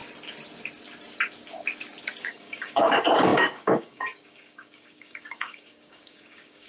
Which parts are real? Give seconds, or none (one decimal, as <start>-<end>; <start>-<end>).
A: 0.0-2.2